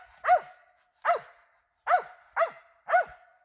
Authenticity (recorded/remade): recorded